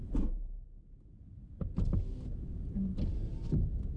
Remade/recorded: recorded